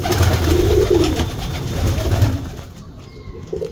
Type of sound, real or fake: real